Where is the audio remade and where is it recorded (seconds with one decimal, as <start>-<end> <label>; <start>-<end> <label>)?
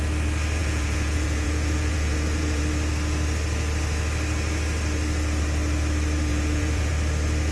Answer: 0.0-0.6 recorded; 0.6-2.6 remade; 2.6-6.3 recorded; 6.3-6.9 remade; 6.9-7.5 recorded